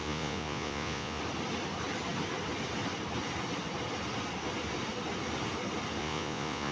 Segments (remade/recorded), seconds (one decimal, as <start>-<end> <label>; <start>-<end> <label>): 0.0-1.2 remade; 1.2-6.0 recorded; 6.0-6.7 remade